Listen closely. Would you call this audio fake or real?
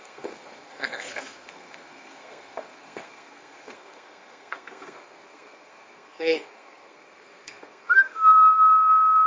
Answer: fake